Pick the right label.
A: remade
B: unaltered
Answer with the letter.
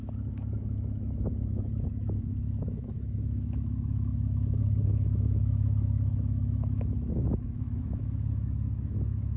A